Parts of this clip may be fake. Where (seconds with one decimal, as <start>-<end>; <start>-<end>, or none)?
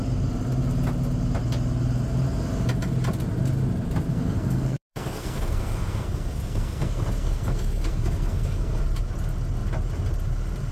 4.1-8.8